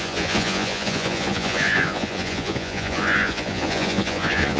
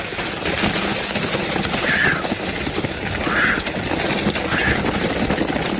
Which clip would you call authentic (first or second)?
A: second